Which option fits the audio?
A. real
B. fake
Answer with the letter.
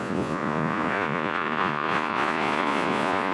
B